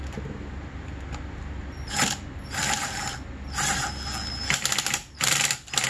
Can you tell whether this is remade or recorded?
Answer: recorded